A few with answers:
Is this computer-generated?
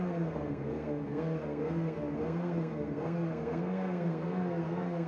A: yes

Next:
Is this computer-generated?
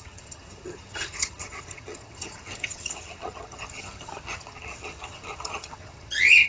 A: yes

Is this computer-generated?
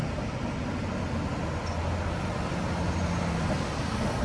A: no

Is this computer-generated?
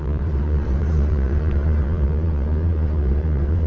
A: yes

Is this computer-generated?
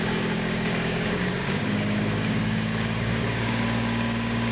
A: yes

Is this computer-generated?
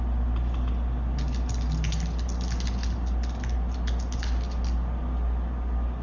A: no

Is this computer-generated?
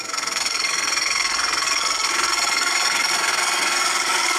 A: yes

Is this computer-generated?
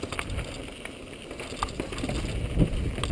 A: no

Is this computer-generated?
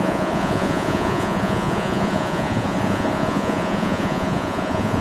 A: yes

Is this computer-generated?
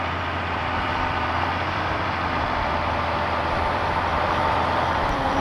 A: yes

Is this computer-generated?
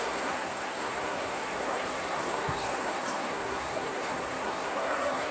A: yes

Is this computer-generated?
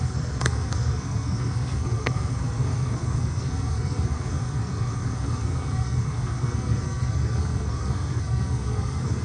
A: yes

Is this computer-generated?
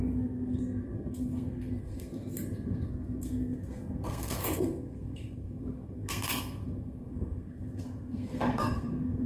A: yes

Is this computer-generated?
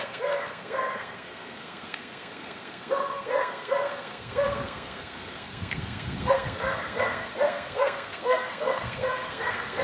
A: yes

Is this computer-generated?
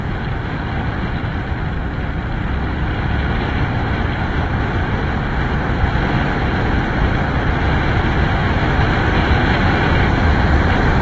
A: no